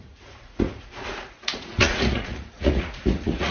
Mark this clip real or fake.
fake